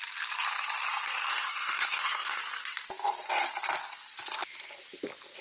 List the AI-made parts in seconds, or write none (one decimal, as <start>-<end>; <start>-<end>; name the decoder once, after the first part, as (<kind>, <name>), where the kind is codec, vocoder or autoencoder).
1.3-2.4 (codec, SNAC)